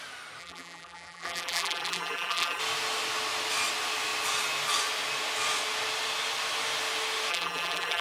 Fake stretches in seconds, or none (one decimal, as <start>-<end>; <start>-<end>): 0.4-2.6; 7.3-8.0